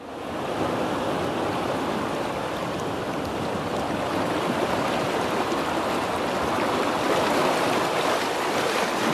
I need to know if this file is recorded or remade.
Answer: recorded